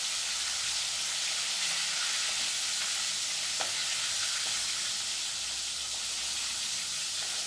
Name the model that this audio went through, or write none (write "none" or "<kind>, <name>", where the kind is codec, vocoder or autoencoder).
none